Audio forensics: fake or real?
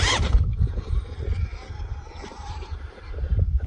fake